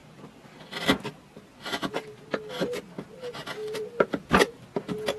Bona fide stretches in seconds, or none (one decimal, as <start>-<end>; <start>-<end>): 2.8-3.6